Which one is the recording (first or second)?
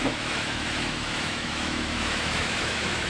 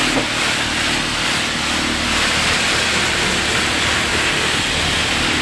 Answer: second